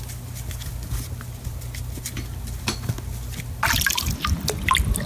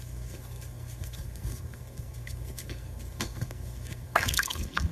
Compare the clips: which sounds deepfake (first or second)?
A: second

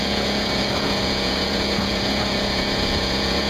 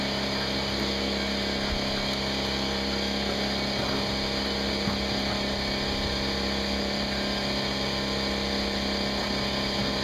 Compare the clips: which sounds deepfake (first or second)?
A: first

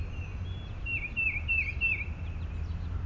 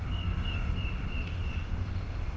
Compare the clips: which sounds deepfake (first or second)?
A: second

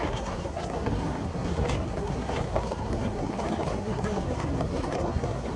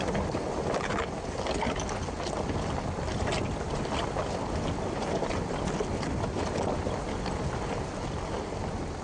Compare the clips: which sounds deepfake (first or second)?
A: first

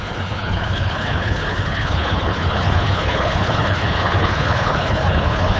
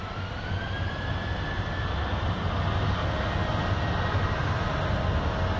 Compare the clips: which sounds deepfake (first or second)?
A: first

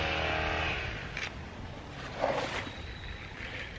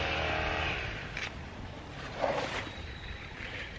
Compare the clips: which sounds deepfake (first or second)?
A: second